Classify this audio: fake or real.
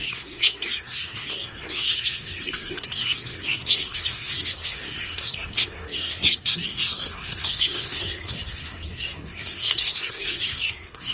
fake